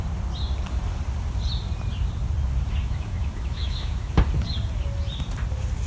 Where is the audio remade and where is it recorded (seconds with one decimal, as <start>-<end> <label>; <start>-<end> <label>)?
0.0-2.8 recorded; 2.8-4.1 remade; 4.1-5.9 recorded